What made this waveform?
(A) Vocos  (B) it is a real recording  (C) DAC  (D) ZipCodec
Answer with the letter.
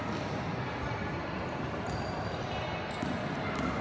B